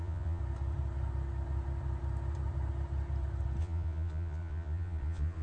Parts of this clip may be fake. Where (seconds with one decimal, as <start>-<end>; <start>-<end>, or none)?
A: 0.0-0.4; 3.6-5.4